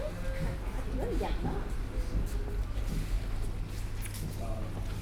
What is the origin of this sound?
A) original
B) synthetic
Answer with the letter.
A